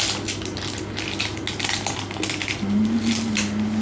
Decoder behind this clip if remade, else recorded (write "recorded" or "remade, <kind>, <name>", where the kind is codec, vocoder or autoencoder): recorded